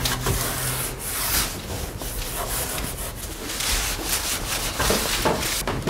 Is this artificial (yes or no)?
no